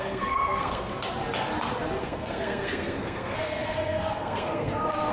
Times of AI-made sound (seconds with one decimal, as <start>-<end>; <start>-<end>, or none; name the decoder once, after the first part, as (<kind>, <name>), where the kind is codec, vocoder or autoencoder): 0.0-0.9 (codec, SNAC); 2.0-5.1